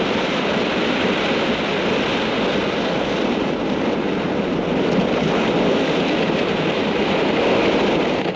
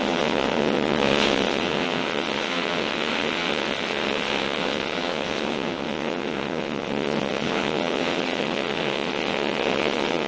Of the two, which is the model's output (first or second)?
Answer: second